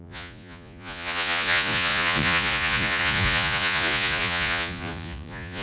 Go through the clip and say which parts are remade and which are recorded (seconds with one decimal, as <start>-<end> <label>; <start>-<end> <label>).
0.0-5.6 remade